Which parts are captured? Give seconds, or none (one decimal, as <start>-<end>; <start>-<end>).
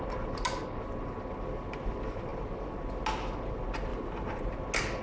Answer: 0.0-3.9; 4.4-5.0